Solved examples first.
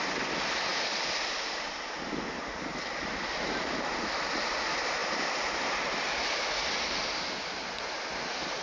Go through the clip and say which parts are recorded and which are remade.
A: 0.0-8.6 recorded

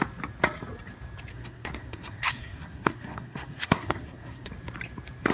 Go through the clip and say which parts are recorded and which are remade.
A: 0.0-1.3 recorded; 1.3-4.5 remade; 4.5-5.3 recorded

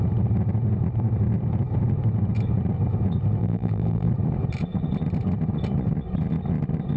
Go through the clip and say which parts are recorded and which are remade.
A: 0.0-3.4 recorded; 3.4-4.1 remade; 4.1-7.0 recorded

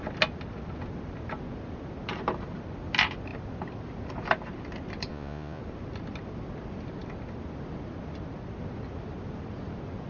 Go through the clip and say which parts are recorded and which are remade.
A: 0.0-5.1 recorded; 5.1-5.6 remade; 5.6-10.1 recorded

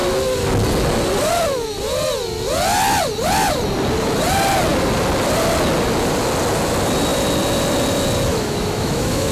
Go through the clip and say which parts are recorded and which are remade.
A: 0.0-8.3 recorded; 8.3-9.3 remade